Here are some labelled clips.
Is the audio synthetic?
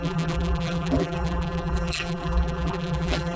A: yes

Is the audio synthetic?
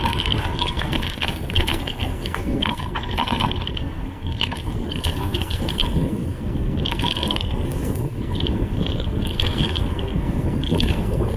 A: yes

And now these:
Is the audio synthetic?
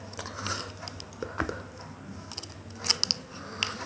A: no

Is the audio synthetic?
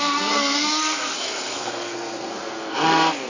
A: yes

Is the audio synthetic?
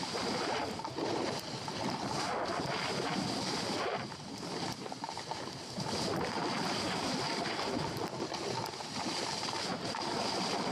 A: no